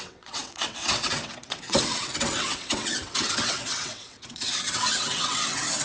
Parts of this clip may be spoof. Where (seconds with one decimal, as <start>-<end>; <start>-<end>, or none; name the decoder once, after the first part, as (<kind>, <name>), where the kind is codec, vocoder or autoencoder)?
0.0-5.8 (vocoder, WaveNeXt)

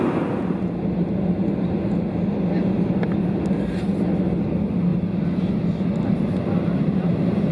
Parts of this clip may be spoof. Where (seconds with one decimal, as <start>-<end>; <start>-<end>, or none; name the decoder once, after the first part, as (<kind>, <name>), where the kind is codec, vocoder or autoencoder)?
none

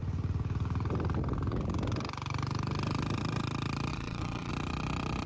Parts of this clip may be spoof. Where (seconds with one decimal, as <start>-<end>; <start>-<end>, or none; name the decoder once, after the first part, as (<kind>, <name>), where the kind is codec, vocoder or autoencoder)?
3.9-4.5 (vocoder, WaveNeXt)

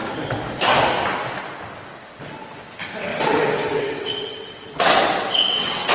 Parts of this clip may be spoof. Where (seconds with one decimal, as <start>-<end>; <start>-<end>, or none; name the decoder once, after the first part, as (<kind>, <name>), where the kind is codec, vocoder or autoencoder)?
3.1-5.9 (vocoder, WaveNeXt)

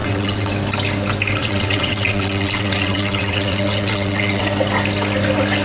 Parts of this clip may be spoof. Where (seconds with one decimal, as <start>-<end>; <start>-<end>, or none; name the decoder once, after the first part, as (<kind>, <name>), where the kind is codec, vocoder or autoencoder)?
0.0-0.5 (vocoder, WaveNeXt); 1.4-4.4

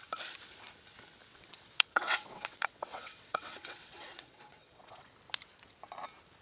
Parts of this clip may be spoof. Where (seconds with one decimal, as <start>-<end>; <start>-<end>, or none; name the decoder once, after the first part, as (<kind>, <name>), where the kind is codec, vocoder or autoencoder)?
1.3-5.1 (vocoder, WaveNeXt)